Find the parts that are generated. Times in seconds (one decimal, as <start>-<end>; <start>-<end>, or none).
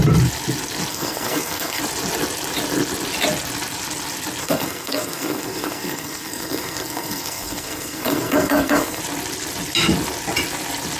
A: 0.9-1.8; 4.4-9.0